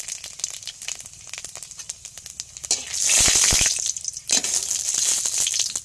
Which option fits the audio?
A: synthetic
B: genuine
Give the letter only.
B